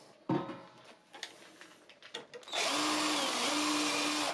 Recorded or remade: recorded